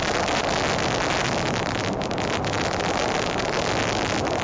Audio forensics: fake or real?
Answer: real